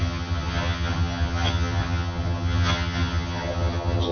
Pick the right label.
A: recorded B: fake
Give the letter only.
B